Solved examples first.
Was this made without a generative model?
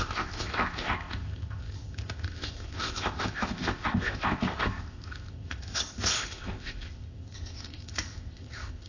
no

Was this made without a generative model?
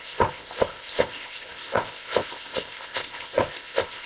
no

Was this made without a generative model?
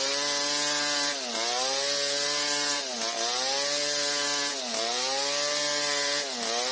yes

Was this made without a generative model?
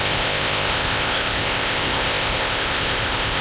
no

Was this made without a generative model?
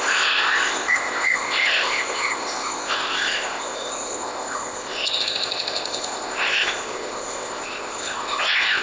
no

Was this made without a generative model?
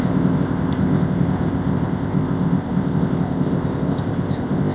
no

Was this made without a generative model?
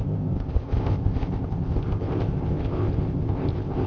no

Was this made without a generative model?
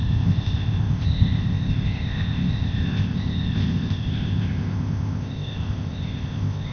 no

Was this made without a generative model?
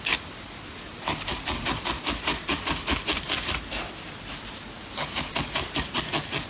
yes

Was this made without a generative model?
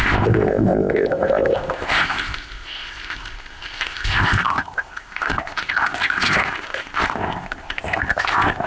no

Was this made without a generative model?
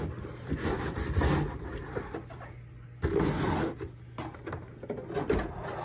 yes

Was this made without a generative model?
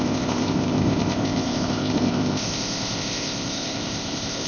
no